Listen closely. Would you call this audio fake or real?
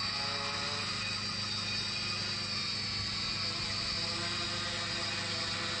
real